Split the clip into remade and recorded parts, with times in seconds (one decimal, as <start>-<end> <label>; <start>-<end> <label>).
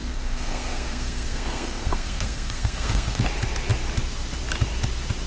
0.0-3.2 remade; 3.2-5.3 recorded